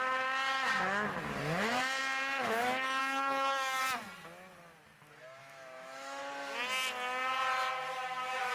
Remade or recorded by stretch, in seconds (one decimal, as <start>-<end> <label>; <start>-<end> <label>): 0.0-3.0 recorded; 3.0-3.8 remade; 3.8-5.4 recorded; 5.4-6.2 remade; 6.2-8.5 recorded